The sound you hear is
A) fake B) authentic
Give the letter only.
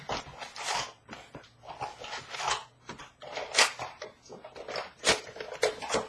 B